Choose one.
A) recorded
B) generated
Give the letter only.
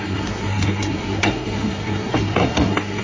B